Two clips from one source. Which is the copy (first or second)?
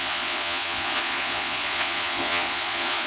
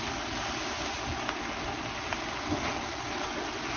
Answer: first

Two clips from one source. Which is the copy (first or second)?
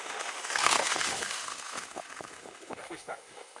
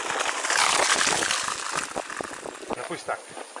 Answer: first